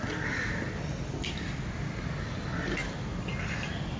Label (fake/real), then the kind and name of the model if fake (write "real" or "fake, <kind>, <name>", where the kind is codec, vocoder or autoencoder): real